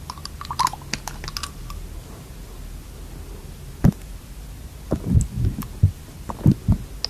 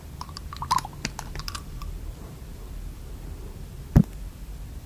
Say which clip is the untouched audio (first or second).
first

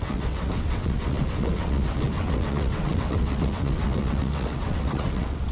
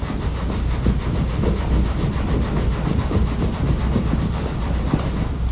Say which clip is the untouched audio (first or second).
second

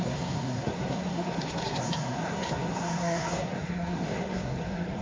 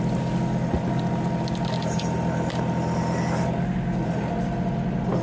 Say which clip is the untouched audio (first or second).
second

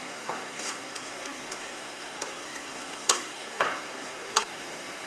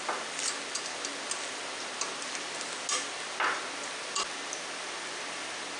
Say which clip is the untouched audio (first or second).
second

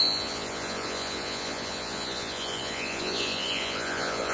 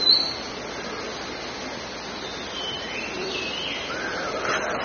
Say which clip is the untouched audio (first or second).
second